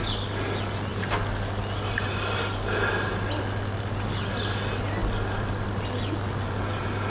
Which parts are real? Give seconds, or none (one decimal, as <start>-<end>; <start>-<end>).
0.0-7.1